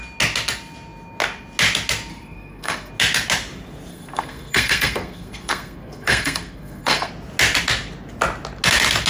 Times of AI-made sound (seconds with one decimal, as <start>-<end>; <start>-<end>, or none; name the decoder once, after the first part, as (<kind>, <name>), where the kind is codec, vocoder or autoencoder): 2.1-2.9 (codec, SNAC); 3.9-7.1